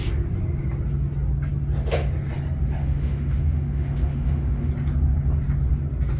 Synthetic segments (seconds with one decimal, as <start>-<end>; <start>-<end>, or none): 2.8-4.7